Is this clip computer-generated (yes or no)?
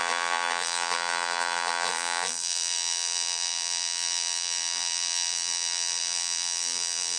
yes